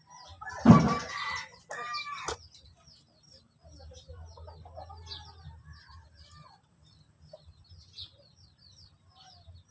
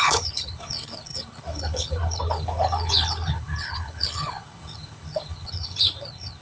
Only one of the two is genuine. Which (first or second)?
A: first